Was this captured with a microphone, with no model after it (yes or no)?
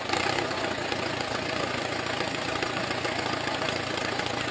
no